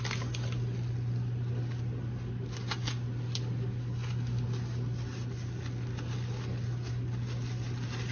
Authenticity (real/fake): real